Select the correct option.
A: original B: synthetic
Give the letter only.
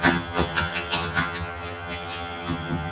B